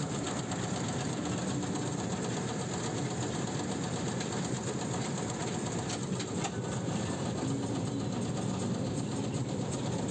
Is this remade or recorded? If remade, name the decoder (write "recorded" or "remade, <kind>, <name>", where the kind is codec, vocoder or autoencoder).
recorded